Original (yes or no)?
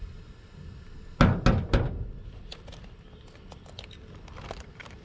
yes